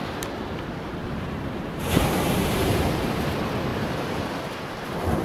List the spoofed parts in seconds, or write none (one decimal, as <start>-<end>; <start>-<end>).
1.0-3.2; 3.7-4.3